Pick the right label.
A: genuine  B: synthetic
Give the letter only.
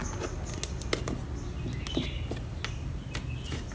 A